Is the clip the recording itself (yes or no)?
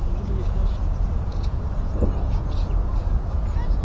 no